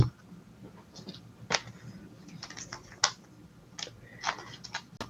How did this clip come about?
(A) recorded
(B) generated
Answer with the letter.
A